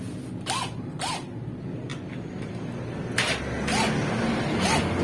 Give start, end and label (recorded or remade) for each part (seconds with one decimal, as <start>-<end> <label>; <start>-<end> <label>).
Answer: 0.0-5.0 recorded